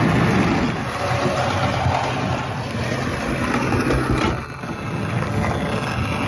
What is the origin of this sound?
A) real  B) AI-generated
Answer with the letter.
A